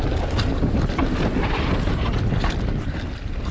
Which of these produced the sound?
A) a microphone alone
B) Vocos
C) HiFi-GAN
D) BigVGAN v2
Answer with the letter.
A